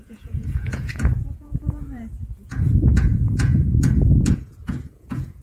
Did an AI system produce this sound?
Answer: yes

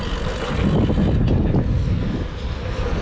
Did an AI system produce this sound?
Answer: no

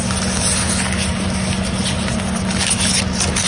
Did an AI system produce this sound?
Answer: no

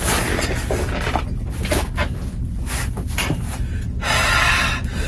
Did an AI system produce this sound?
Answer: no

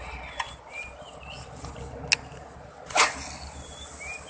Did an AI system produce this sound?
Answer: no